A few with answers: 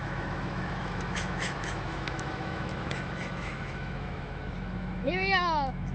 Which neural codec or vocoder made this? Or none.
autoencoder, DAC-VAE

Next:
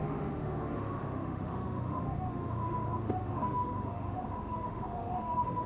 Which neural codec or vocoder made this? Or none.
autoencoder, DAC-VAE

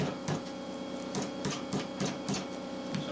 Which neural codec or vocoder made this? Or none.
none